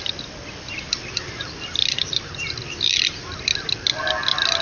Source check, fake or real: real